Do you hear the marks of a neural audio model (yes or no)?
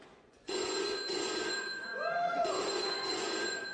yes